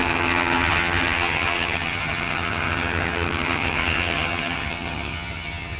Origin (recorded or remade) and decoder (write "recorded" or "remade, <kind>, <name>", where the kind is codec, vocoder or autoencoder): remade, vocoder, HiFi-GAN